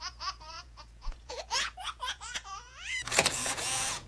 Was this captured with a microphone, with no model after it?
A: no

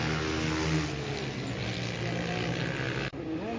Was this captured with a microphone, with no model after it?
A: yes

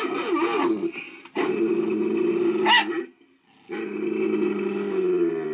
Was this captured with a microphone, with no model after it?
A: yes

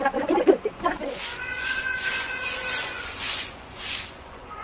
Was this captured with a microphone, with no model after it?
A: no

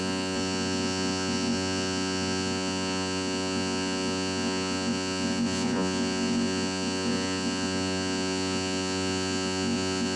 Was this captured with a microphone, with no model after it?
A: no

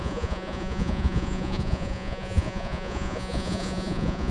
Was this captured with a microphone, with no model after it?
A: no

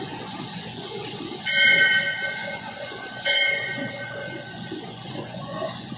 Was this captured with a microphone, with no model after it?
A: no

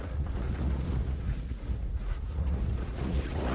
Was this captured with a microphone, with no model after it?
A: no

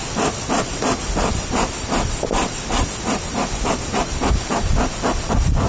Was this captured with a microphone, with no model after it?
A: yes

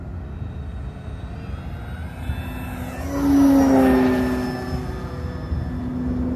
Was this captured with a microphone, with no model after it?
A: yes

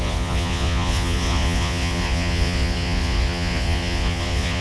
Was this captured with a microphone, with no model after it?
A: no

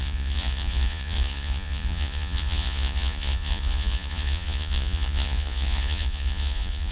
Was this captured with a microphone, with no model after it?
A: no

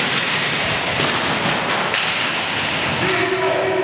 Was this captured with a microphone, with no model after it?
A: yes